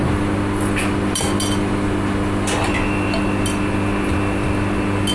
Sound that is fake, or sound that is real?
real